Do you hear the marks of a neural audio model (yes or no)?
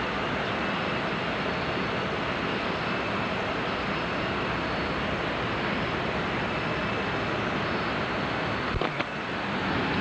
no